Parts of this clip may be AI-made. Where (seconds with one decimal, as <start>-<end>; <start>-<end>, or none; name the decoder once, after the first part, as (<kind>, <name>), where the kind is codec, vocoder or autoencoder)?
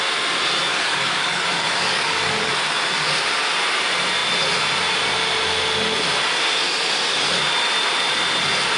0.7-2.5 (codec, DAC)